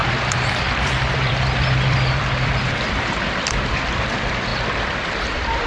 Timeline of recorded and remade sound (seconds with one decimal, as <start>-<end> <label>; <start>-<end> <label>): 0.0-4.5 remade; 4.5-5.1 recorded; 5.1-5.7 remade

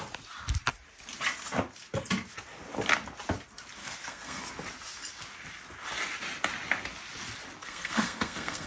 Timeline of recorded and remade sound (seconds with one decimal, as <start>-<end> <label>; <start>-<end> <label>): 0.0-3.8 recorded; 3.8-4.4 remade; 4.4-7.6 recorded; 7.6-8.7 remade

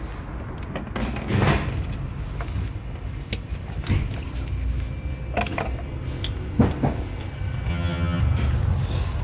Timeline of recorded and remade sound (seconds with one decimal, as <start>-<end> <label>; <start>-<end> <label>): 0.0-7.7 recorded; 7.7-8.2 remade; 8.2-9.2 recorded

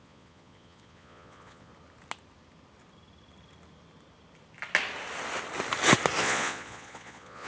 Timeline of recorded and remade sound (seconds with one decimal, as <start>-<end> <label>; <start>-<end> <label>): 0.0-1.7 remade; 1.7-6.2 recorded; 6.2-7.5 remade

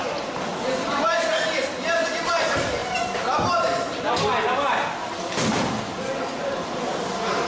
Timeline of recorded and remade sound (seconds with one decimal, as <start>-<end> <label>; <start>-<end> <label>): 0.0-7.5 recorded

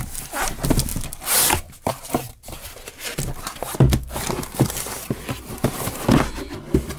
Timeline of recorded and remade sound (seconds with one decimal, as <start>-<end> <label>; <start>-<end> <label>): 0.0-7.0 recorded